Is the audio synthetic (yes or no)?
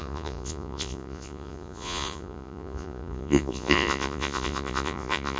yes